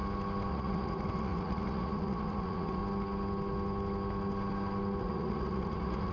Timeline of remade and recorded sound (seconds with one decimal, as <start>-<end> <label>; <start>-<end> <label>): 0.0-0.5 recorded; 0.5-2.8 remade; 2.8-5.0 recorded; 5.0-6.1 remade